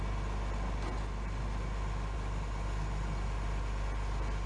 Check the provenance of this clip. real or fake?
real